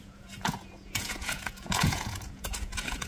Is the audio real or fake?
fake